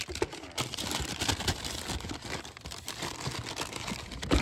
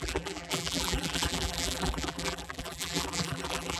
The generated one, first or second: second